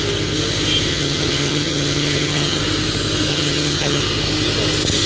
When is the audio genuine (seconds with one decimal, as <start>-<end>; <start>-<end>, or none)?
0.0-0.9; 2.6-3.3; 4.0-5.1